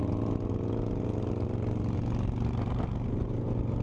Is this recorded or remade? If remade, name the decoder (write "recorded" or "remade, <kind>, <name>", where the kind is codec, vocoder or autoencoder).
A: recorded